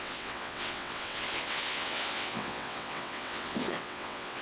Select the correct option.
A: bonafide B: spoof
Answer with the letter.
B